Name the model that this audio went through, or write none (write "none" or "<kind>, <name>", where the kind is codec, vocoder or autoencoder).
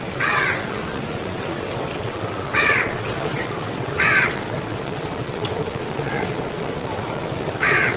vocoder, WaveNeXt